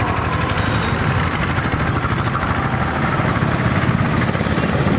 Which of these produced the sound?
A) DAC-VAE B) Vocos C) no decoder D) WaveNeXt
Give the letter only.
C